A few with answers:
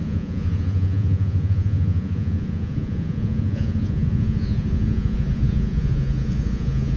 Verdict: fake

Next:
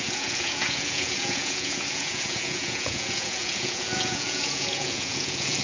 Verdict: fake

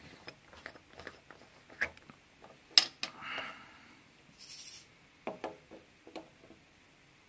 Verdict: real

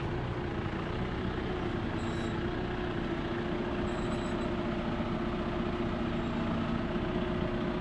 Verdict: real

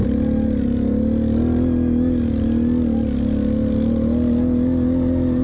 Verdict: real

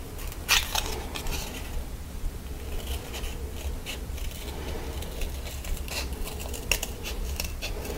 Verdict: real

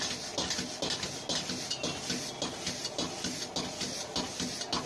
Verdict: real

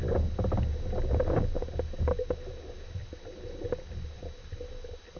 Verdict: real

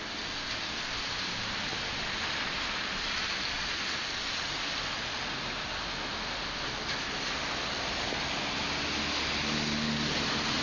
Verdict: real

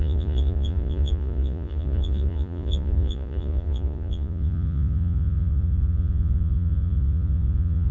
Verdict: fake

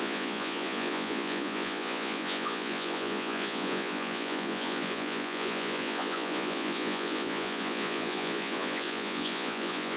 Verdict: fake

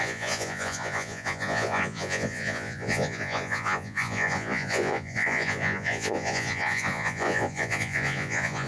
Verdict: fake